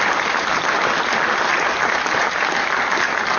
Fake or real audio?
real